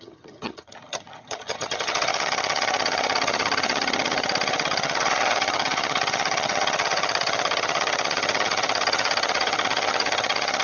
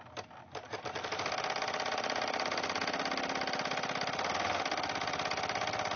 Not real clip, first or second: first